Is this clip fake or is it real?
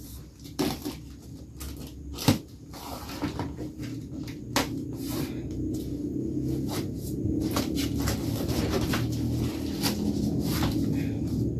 real